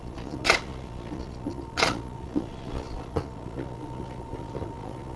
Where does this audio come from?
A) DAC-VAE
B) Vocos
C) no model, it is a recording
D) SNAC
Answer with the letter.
B